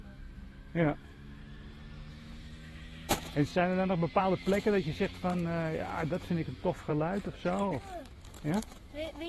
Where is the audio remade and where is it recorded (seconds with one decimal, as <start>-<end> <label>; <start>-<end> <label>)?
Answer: 0.0-1.4 remade; 1.4-2.1 recorded; 2.1-3.5 remade; 3.5-4.2 recorded; 4.2-6.9 remade; 6.9-8.0 recorded; 8.0-9.3 remade